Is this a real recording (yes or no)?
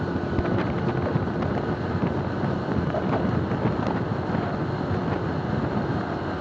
yes